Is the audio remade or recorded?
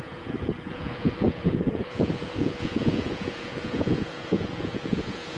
remade